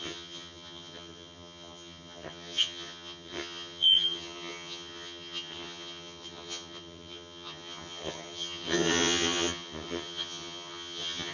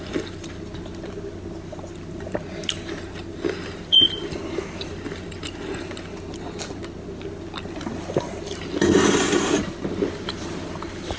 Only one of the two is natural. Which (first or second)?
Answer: second